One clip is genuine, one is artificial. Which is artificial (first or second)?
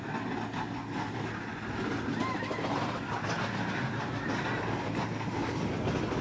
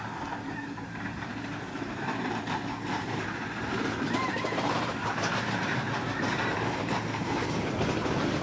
second